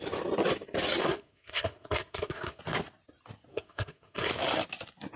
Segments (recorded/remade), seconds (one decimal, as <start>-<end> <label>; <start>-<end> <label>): 0.0-1.0 recorded; 1.0-2.6 remade; 2.6-3.5 recorded; 3.5-4.3 remade; 4.3-5.2 recorded